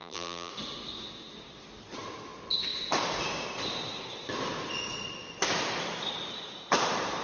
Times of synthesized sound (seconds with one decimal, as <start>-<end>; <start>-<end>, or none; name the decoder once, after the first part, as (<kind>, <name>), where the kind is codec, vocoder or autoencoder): 0.0-0.5 (vocoder, BigVGAN v2)